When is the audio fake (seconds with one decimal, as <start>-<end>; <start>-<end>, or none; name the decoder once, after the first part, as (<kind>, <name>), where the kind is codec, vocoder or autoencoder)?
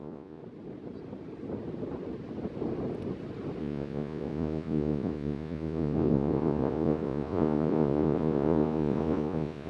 0.0-0.4 (vocoder, Vocos); 3.6-9.7